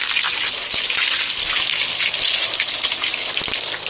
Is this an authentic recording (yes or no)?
yes